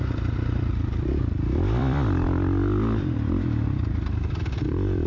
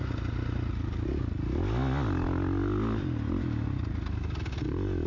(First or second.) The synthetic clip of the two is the first